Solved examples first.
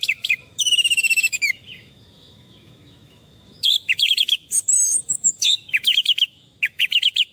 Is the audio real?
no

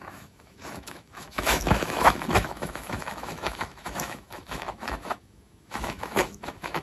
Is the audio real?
no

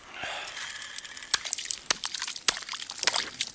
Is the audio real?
yes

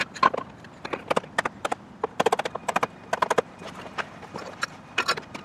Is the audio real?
yes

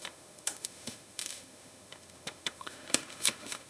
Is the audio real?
no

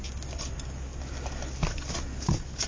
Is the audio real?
yes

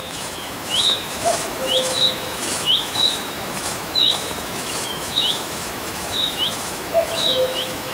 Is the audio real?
no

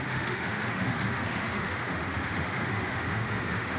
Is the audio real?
no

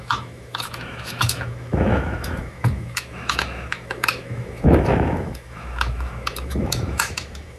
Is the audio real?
no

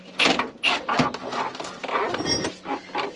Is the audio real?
yes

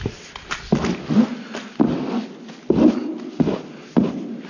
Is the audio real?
yes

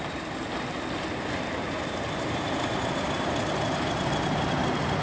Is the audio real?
yes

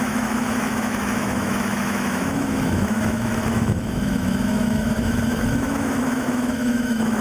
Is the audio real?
no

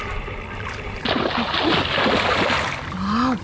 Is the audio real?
yes